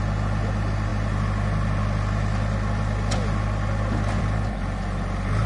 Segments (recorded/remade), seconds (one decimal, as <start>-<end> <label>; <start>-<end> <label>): 0.0-5.5 recorded